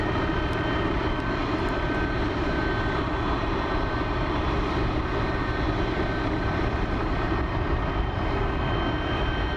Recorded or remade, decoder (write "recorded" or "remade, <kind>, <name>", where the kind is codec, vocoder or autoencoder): recorded